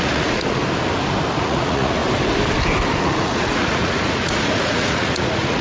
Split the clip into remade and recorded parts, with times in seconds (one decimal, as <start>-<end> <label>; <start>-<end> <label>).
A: 0.0-0.6 remade; 0.6-1.4 recorded; 1.4-2.0 remade; 2.0-3.0 recorded; 3.0-5.6 remade